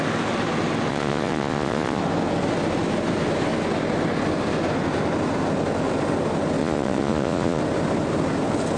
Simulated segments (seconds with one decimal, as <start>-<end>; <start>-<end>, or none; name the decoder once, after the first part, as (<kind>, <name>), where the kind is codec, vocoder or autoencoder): 0.9-2.0 (vocoder, Vocos); 6.6-7.6